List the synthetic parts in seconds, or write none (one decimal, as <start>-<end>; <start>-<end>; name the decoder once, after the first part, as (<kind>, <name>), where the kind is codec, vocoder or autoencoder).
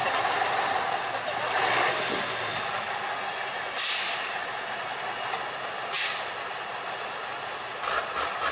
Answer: none